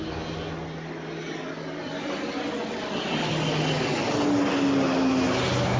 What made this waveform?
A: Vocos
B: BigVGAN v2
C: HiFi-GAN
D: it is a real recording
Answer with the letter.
D